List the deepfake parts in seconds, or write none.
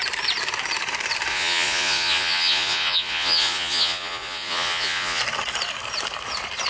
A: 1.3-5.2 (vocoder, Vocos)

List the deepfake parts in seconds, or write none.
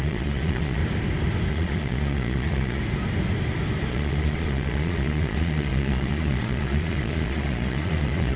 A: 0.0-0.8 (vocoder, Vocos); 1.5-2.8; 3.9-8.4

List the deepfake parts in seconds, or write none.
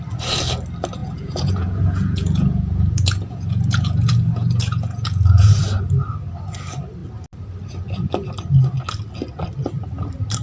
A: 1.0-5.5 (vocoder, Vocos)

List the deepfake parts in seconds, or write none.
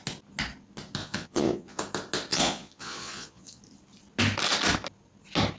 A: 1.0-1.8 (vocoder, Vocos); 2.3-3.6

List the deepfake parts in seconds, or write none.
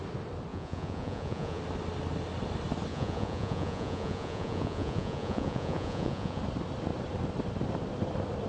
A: 0.5-1.6 (vocoder, Vocos); 2.9-6.4